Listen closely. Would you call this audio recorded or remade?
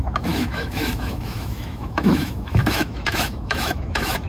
remade